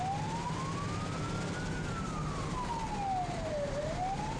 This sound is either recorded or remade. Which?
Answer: recorded